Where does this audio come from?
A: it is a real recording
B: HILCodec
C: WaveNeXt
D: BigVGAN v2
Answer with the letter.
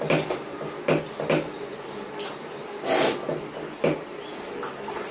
A